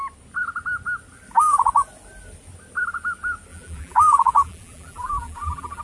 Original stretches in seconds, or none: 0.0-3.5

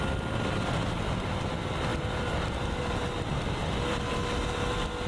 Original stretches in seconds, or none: 0.0-5.1

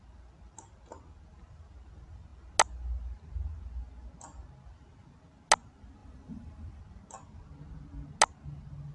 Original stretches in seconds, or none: 0.0-6.0; 6.8-8.9

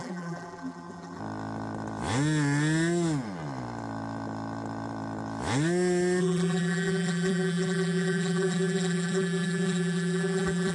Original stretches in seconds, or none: 1.2-6.2